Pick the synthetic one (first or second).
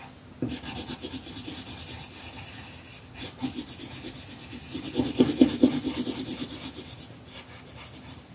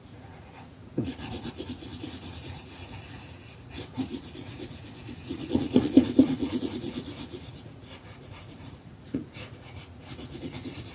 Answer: second